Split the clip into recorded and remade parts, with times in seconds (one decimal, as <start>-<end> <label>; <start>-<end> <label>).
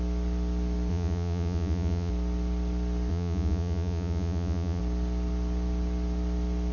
0.0-0.9 recorded; 0.9-2.1 remade; 2.1-3.1 recorded; 3.1-4.8 remade; 4.8-6.7 recorded